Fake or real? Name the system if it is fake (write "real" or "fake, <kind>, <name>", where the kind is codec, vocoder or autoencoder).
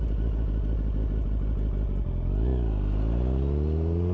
real